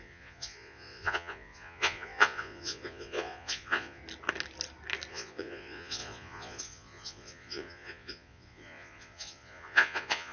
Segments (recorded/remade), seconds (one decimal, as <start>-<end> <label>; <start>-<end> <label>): 0.0-4.0 remade; 4.0-5.1 recorded; 5.1-10.3 remade